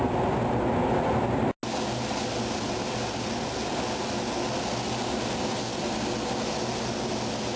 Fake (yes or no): no